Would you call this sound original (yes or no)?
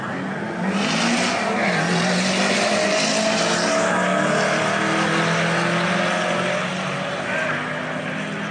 yes